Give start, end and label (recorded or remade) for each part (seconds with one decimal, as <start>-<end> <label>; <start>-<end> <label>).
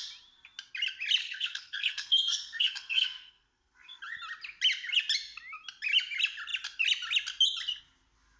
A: 0.0-1.2 recorded; 1.2-4.0 remade; 4.0-8.4 recorded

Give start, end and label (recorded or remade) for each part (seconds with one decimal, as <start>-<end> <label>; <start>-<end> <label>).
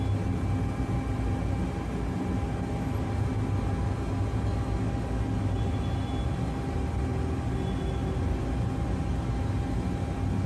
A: 0.0-10.5 recorded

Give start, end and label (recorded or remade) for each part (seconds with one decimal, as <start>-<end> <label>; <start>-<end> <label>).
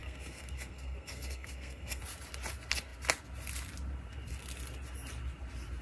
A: 0.0-2.0 remade; 2.0-5.8 recorded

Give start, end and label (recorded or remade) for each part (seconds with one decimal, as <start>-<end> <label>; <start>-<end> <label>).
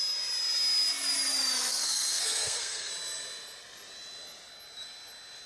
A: 0.0-1.7 recorded; 1.7-2.9 remade; 2.9-5.5 recorded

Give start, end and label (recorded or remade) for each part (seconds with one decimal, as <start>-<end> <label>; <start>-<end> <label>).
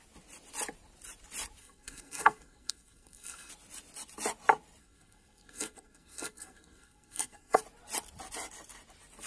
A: 0.0-1.6 recorded; 1.6-3.5 remade; 3.5-4.8 recorded; 4.8-7.6 remade; 7.6-9.3 recorded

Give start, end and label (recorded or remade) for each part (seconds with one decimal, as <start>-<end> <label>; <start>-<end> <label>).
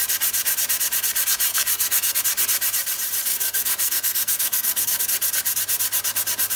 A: 0.0-1.5 recorded; 1.5-2.2 remade; 2.2-3.3 recorded; 3.3-5.0 remade; 5.0-6.6 recorded